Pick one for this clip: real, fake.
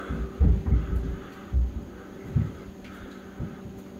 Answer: real